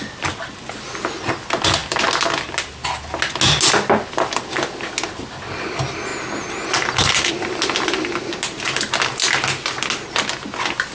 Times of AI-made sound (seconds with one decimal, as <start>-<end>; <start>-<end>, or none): none